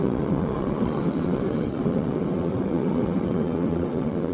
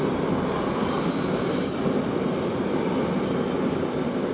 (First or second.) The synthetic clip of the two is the first